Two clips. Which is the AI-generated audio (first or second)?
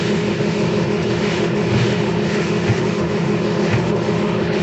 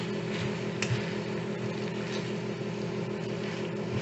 first